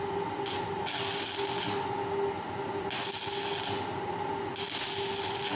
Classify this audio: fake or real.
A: real